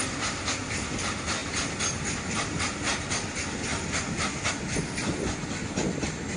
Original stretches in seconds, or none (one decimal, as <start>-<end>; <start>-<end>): 0.0-6.4